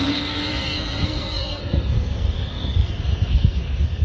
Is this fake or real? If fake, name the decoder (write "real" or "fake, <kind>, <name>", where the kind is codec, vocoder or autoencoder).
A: fake, codec, SNAC